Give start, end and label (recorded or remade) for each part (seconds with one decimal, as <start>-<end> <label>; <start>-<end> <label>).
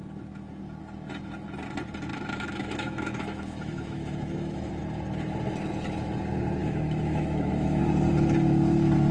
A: 0.0-2.1 recorded; 2.1-4.7 remade; 4.7-6.6 recorded; 6.6-7.8 remade; 7.8-9.1 recorded